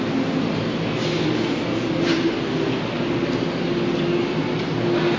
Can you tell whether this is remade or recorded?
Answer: recorded